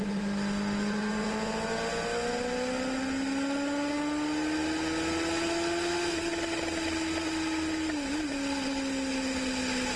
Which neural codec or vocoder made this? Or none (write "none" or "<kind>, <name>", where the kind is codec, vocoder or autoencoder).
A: none